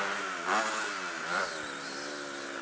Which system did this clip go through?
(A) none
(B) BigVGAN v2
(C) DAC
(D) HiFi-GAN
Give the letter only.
A